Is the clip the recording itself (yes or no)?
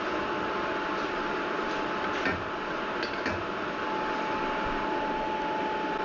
yes